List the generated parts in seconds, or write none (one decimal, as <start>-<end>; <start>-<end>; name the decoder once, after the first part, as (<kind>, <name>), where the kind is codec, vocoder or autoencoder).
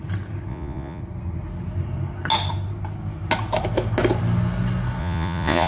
0.5-1.0 (vocoder, Vocos); 5.0-5.7